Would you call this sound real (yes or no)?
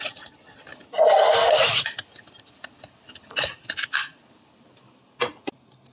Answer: yes